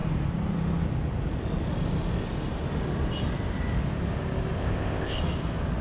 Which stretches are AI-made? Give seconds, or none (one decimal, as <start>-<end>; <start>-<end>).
4.6-5.2